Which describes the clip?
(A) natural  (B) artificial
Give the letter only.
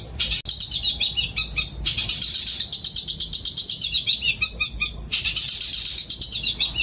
A